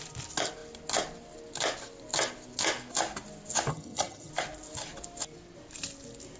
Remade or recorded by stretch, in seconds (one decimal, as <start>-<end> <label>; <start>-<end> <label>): 0.0-3.7 recorded; 3.7-4.3 remade; 4.3-6.4 recorded